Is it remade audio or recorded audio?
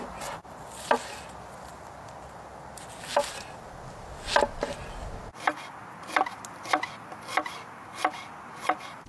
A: recorded